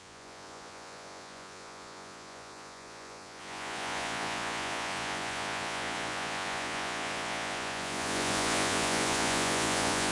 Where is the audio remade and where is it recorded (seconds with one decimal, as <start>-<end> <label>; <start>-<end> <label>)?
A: 0.0-10.1 remade